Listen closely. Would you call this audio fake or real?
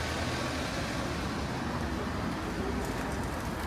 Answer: real